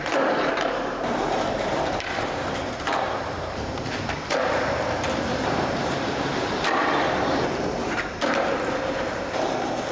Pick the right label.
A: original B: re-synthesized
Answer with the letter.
B